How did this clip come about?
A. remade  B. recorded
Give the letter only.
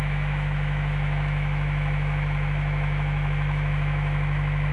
A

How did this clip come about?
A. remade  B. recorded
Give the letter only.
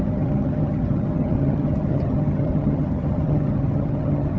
A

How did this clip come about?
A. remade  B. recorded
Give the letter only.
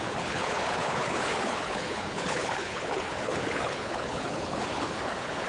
A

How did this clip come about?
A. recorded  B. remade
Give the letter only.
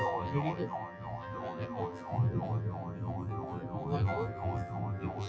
B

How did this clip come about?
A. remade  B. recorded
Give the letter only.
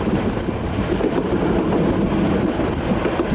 B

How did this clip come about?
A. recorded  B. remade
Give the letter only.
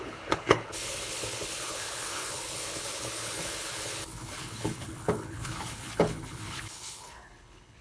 B